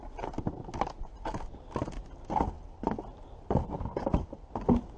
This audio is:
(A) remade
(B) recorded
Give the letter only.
B